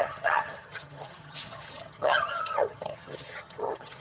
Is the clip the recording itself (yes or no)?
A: no